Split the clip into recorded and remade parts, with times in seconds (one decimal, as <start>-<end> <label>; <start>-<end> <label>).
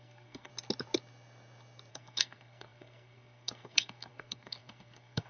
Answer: 0.0-0.5 remade; 0.5-1.9 recorded; 1.9-5.3 remade